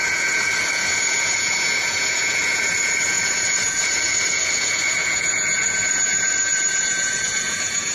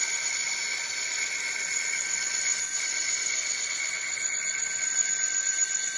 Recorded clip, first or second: second